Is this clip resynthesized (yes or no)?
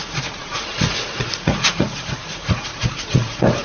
yes